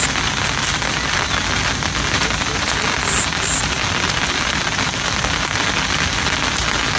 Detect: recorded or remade recorded